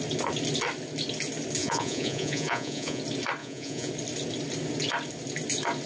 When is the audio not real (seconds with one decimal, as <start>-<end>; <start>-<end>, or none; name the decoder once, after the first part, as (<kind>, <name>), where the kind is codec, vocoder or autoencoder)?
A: 1.6-3.0 (vocoder, Vocos); 3.4-3.9